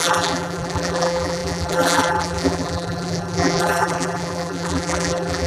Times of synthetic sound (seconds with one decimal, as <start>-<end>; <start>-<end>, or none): 0.0-5.5